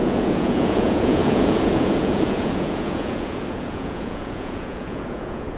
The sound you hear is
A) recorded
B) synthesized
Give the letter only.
B